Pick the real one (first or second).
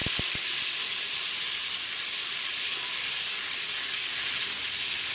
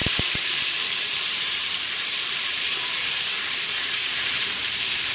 first